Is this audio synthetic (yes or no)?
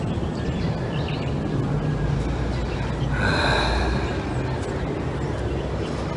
no